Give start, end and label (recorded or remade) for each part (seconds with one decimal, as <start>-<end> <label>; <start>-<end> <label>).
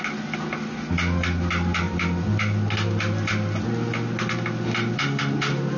0.0-5.8 recorded